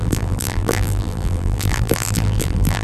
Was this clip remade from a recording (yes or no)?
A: yes